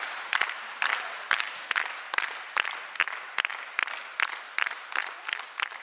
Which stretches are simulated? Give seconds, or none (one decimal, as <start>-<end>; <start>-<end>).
0.9-1.6